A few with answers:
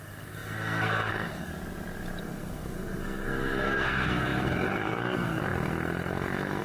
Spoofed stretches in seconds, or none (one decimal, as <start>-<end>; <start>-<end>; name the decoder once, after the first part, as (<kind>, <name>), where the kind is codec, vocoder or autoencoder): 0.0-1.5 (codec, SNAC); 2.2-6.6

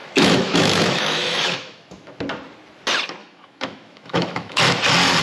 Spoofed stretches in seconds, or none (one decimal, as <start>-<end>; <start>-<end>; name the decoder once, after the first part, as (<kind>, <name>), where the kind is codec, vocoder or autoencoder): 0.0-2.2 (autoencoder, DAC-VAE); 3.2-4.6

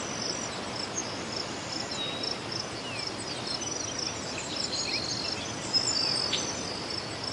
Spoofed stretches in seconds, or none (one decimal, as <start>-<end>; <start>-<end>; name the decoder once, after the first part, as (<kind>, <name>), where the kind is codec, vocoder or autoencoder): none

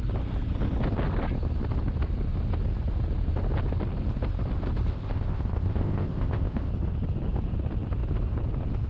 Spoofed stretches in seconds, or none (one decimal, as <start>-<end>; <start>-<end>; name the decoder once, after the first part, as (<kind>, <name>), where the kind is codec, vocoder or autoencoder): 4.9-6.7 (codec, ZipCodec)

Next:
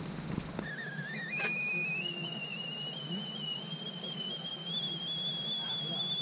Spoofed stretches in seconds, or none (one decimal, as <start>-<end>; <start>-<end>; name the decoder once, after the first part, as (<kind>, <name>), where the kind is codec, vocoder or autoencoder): none

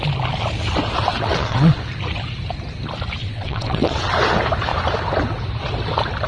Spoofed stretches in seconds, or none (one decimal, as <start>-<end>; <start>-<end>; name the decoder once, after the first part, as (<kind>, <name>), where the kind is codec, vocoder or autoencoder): 1.1-1.8 (vocoder, WaveNeXt); 3.2-4.1

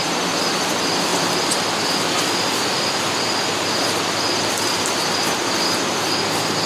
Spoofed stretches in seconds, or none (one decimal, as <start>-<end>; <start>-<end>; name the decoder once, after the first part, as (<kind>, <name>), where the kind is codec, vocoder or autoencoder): none

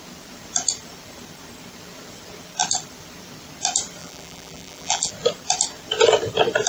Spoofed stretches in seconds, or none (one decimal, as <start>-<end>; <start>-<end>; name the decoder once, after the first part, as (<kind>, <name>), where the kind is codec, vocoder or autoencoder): 4.0-5.1 (vocoder, BigVGAN v2)